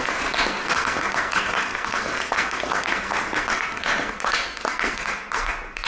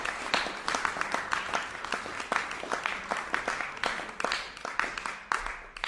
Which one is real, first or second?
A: second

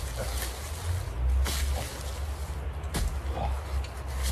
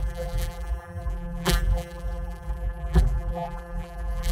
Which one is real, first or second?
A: first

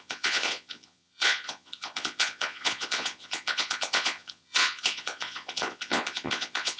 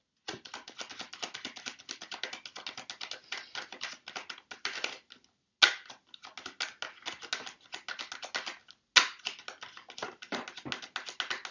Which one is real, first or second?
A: second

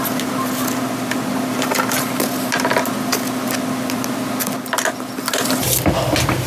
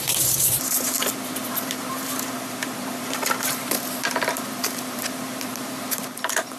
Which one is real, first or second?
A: first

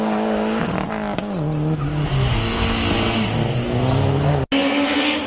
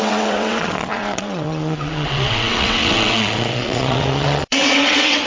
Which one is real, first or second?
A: first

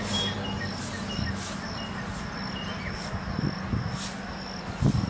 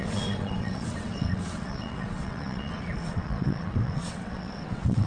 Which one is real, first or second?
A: first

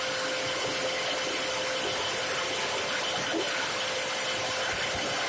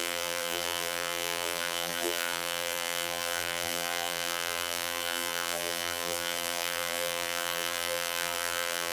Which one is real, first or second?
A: first